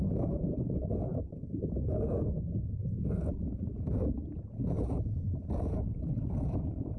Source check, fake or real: fake